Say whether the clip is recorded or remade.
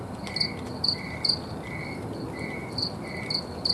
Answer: recorded